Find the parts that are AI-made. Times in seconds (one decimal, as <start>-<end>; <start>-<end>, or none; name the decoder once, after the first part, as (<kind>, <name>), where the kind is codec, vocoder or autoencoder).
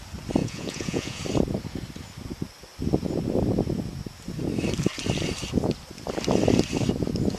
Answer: 0.4-1.2 (vocoder, Vocos)